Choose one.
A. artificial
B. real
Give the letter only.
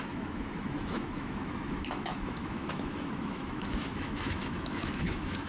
A